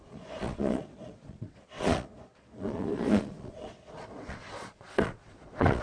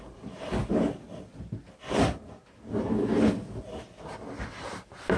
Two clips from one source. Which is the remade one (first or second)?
first